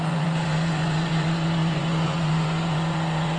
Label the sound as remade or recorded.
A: remade